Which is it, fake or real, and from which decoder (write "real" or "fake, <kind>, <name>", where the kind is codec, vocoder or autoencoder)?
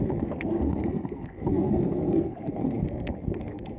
fake, codec, SNAC